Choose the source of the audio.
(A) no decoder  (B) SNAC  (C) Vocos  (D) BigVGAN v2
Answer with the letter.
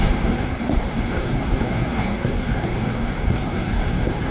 B